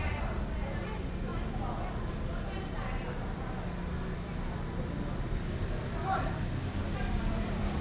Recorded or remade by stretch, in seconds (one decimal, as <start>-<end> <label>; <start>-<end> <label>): 0.0-1.3 remade; 1.3-5.3 recorded; 5.3-7.8 remade